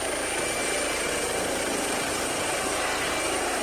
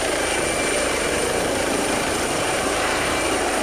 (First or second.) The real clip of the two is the first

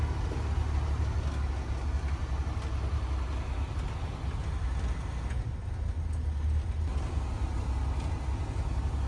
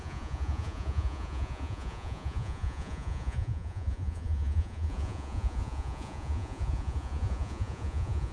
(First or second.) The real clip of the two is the first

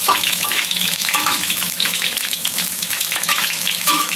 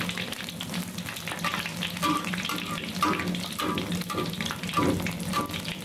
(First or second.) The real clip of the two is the second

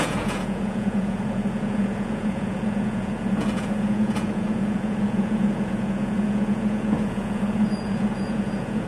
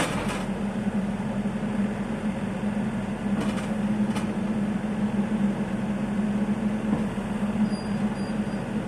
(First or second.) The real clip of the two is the second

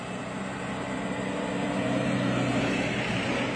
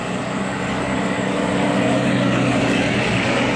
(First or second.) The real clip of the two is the first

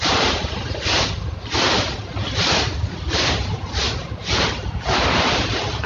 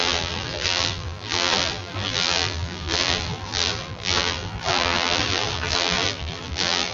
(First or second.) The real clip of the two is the first